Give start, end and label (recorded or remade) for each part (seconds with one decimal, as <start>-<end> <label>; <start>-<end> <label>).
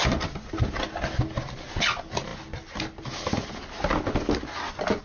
0.0-5.0 recorded